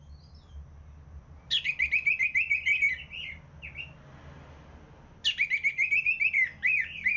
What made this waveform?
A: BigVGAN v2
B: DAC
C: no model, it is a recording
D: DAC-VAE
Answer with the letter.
C